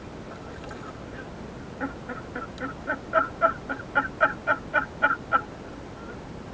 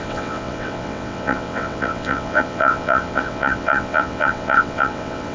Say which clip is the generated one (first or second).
second